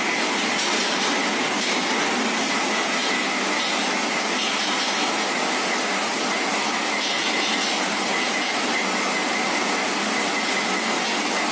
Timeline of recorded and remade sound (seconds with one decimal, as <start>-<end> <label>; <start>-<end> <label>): 0.0-11.5 recorded